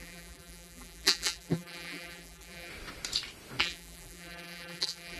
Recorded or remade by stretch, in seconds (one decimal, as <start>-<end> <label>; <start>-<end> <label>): 0.0-2.7 remade; 2.7-3.6 recorded; 3.6-5.2 remade